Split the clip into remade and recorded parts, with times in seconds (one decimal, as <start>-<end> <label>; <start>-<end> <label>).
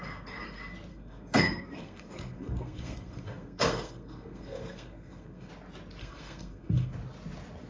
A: 0.0-0.9 recorded; 0.9-5.5 remade; 5.5-6.0 recorded; 6.0-6.9 remade; 6.9-7.7 recorded